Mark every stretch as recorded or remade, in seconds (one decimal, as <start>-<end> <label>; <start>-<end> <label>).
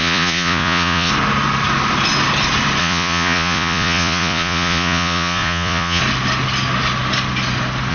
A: 0.0-1.1 remade; 1.1-2.8 recorded; 2.8-6.0 remade; 6.0-7.9 recorded